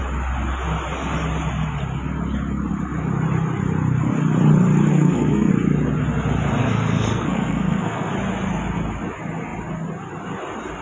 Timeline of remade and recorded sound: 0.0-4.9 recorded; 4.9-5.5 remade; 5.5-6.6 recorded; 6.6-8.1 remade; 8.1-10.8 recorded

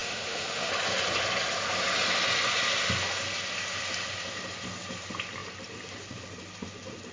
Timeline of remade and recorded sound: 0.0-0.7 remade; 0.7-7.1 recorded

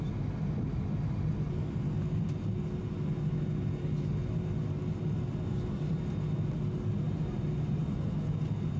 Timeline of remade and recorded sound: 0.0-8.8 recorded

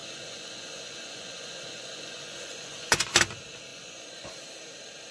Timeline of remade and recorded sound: 0.0-3.1 remade; 3.1-3.7 recorded; 3.7-4.4 remade; 4.4-5.1 recorded

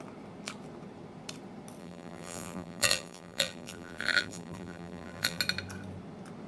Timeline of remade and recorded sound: 0.0-1.8 recorded; 1.8-5.4 remade; 5.4-6.5 recorded